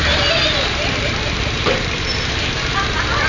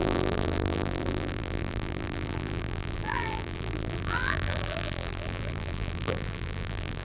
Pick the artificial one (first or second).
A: second